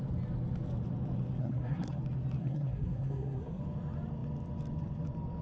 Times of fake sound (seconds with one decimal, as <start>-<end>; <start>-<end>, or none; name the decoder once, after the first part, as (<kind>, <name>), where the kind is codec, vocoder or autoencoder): 1.4-2.0 (codec, SNAC); 2.4-3.6